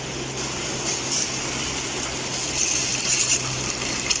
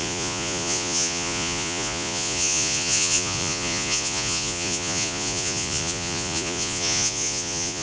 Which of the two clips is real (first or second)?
first